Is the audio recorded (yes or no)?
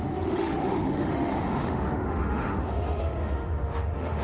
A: no